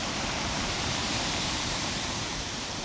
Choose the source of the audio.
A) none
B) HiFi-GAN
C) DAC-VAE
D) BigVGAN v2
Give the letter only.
D